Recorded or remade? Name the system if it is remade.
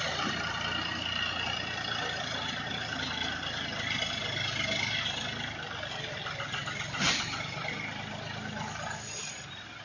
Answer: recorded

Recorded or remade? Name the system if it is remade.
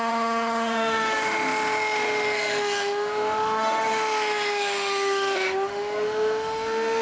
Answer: remade, autoencoder, DAC-VAE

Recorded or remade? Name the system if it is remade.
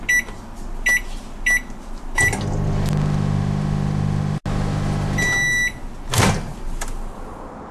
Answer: recorded